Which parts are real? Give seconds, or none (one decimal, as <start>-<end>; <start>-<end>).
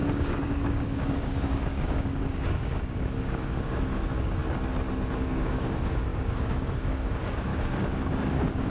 4.4-5.1